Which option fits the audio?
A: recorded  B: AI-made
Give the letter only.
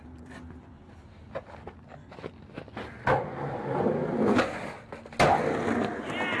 A